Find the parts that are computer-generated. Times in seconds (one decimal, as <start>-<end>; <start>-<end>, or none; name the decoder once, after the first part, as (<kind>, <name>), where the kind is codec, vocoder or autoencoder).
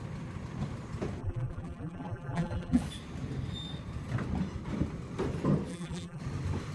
1.2-2.8 (vocoder, BigVGAN v2); 5.7-6.2